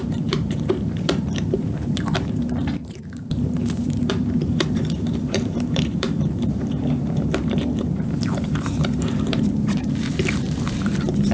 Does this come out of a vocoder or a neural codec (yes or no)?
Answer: yes